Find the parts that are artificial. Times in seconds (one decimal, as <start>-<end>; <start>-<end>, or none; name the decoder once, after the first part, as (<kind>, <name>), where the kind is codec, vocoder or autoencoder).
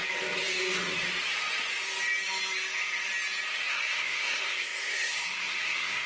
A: 3.7-6.1 (codec, SNAC)